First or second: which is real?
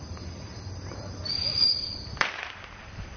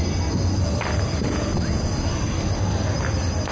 second